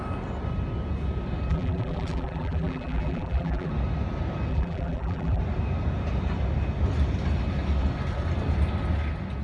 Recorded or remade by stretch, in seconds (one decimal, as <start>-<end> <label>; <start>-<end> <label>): 0.0-1.5 recorded; 1.5-3.7 remade; 3.7-4.5 recorded; 4.5-5.4 remade; 5.4-9.4 recorded